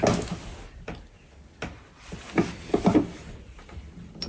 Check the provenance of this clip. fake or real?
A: real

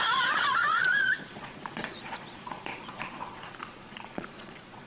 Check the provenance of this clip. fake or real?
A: fake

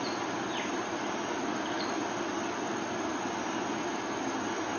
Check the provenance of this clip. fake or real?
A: real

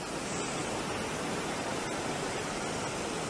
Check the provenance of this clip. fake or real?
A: real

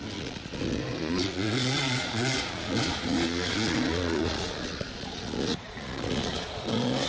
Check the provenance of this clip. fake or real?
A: fake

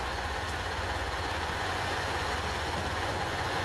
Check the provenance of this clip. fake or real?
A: fake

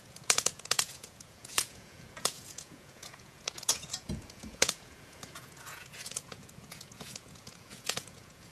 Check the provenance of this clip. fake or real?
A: fake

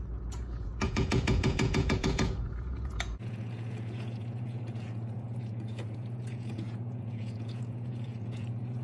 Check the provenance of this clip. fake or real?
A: fake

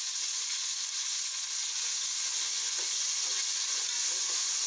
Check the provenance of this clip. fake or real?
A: fake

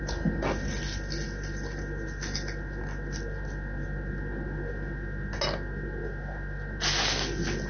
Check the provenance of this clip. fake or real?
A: real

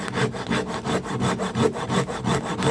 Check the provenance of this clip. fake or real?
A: real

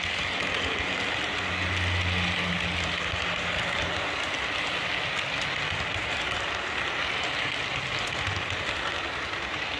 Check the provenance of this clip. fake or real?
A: real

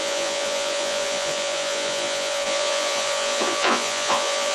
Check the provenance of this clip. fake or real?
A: fake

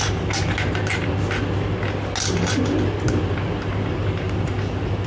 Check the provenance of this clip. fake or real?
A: real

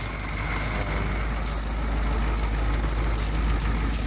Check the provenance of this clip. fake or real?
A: real